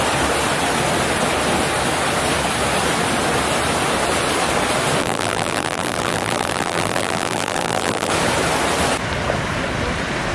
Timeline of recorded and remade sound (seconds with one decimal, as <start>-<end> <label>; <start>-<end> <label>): 0.0-5.0 recorded; 5.0-8.1 remade; 8.1-10.3 recorded